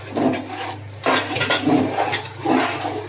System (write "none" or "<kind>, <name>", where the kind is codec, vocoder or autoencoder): none